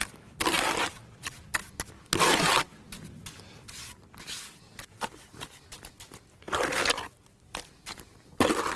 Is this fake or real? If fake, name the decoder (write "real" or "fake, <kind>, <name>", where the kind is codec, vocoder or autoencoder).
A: real